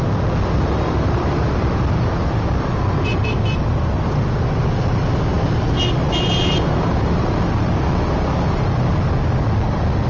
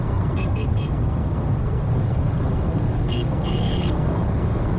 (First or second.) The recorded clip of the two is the first